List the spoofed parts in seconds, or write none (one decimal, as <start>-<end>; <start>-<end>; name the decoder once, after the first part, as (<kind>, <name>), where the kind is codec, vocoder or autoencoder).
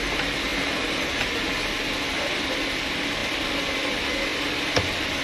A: 0.5-1.6 (vocoder, BigVGAN v2)